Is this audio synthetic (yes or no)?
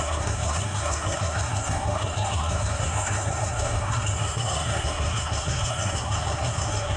yes